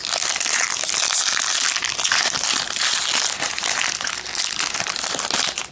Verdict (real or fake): real